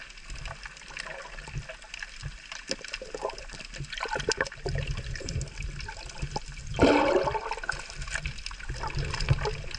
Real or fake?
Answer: real